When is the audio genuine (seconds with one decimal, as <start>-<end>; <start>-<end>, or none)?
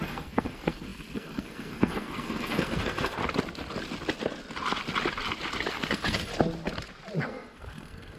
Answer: 3.2-5.7; 6.3-7.2